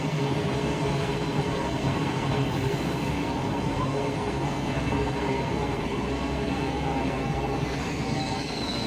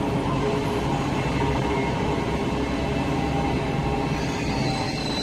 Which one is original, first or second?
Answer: second